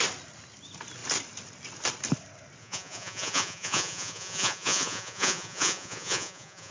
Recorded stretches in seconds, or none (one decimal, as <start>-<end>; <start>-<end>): 0.0-2.6